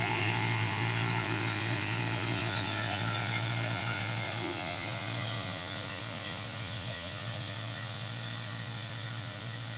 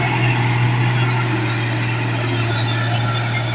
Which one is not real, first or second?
first